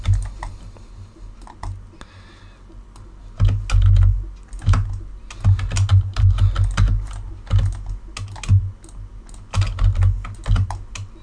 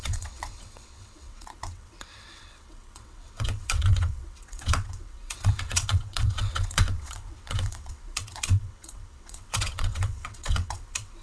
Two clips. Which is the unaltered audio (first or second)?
first